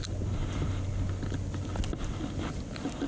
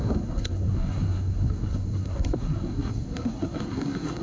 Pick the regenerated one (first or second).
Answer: second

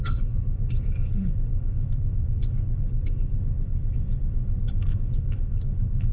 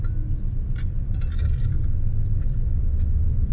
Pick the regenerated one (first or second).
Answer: first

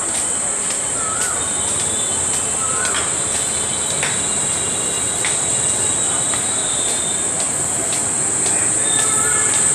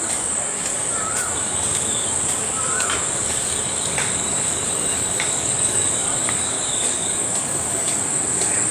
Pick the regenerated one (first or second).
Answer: second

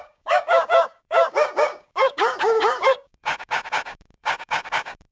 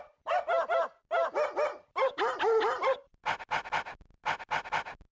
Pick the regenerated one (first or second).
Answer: first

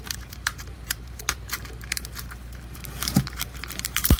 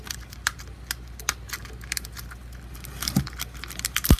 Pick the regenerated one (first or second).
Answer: first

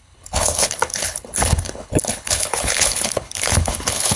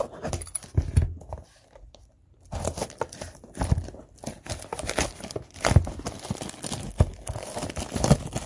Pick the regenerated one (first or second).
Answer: first